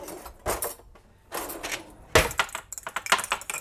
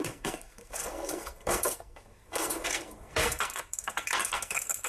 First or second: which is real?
first